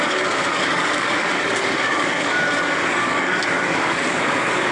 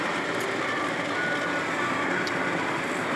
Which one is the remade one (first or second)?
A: first